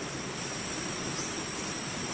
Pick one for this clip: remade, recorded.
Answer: recorded